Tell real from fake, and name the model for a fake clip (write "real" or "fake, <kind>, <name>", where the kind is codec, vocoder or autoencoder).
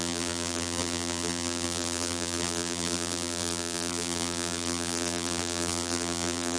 fake, vocoder, BigVGAN v2